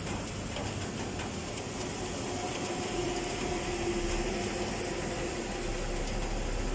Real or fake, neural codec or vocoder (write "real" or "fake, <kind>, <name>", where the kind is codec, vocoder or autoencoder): real